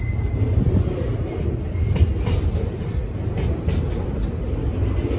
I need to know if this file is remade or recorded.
recorded